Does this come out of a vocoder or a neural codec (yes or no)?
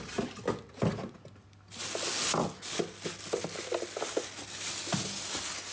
no